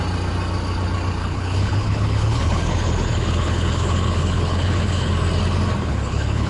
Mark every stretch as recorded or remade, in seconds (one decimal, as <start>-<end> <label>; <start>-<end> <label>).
0.0-1.2 recorded; 1.2-5.1 remade; 5.1-5.8 recorded; 5.8-6.5 remade